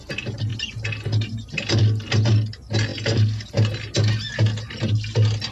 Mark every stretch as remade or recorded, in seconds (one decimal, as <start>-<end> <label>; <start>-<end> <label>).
0.0-5.5 recorded